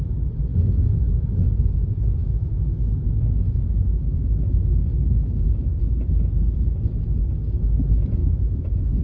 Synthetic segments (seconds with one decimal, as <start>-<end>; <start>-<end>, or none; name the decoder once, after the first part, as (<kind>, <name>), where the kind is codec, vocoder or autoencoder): 0.5-1.7 (autoencoder, DAC-VAE); 2.2-5.8; 8.2-9.0